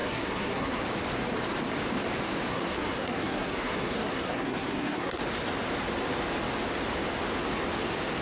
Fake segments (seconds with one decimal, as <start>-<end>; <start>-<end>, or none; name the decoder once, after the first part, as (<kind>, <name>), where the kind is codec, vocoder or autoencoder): 0.0-0.8 (codec, SNAC); 2.5-5.2